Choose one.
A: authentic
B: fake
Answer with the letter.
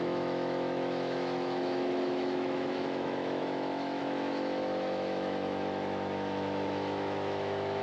B